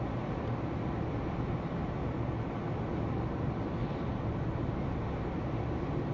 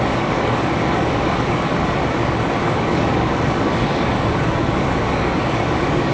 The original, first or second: first